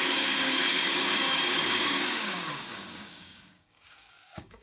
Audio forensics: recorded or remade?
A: remade